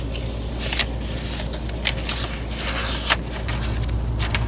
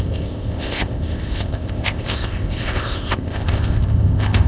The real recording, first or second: first